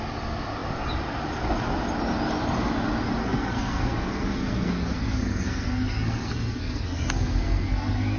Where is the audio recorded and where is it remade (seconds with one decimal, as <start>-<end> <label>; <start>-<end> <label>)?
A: 0.0-3.2 recorded; 3.2-8.2 remade